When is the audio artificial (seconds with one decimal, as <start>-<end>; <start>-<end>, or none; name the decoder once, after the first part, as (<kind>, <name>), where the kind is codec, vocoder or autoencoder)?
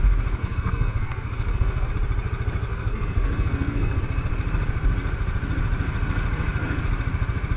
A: 0.4-1.9 (codec, SNAC); 2.7-4.0